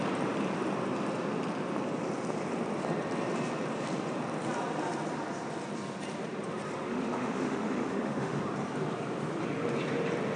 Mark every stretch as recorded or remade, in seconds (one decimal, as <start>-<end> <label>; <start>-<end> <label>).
0.0-6.9 recorded; 6.9-8.4 remade; 8.4-10.4 recorded